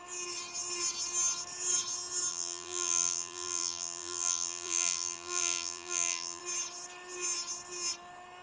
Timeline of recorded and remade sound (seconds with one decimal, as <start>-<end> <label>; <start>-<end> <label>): 0.0-2.3 recorded; 2.3-6.4 remade; 6.4-8.4 recorded